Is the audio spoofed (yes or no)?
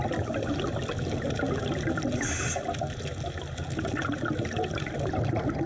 no